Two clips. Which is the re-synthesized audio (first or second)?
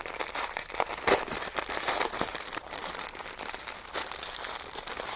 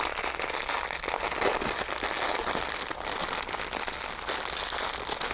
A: first